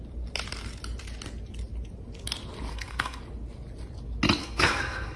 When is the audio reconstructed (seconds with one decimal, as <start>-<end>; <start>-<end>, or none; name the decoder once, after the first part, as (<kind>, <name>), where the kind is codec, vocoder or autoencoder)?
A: 2.7-3.2 (codec, SNAC); 4.4-5.2